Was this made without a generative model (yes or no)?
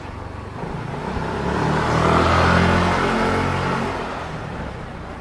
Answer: yes